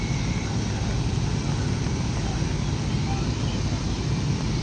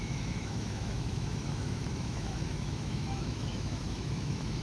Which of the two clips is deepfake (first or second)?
second